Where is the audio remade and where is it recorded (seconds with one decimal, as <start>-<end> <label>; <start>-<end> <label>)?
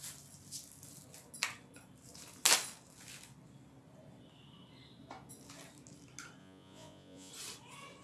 0.0-6.4 recorded; 6.4-7.3 remade; 7.3-8.0 recorded